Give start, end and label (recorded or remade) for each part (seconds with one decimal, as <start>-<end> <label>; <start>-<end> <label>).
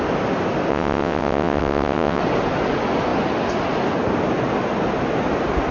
0.0-0.7 recorded; 0.7-2.2 remade; 2.2-5.7 recorded